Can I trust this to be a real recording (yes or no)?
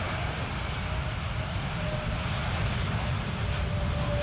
yes